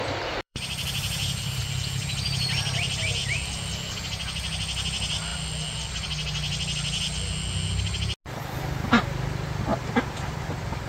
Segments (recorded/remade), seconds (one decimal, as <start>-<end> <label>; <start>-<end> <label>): 0.0-1.6 remade; 1.6-9.7 recorded; 9.7-10.4 remade; 10.4-10.9 recorded